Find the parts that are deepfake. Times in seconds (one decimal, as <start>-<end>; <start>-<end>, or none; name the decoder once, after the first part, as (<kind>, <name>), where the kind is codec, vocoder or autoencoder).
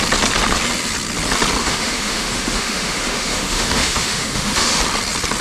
1.6-4.8 (autoencoder, DAC-VAE)